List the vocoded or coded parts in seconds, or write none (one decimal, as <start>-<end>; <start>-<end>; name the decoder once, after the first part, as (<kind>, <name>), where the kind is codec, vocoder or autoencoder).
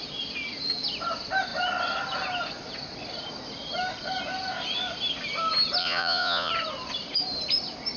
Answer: 5.8-6.5 (vocoder, Vocos)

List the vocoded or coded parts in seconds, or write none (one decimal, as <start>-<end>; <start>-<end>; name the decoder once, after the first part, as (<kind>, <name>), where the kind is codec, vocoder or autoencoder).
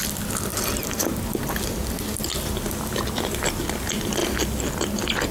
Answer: none